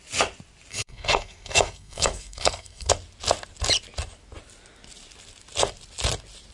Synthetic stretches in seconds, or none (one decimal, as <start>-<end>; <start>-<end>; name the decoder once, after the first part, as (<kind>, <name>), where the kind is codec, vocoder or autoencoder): 0.7-2.9 (codec, SNAC)